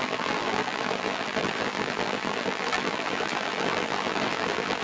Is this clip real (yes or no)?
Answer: no